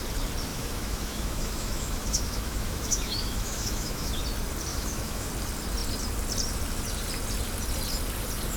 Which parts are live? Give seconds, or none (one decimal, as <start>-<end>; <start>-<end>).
0.0-0.5; 4.2-4.7; 5.3-8.6